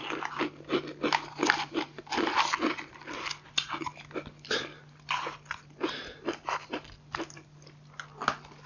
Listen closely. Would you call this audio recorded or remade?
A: recorded